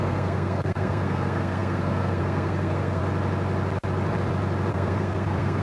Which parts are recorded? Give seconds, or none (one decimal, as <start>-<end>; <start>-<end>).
3.0-4.7